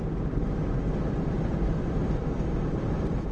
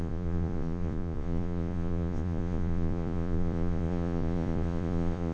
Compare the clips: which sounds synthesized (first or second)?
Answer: second